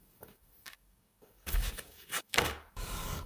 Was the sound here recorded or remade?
remade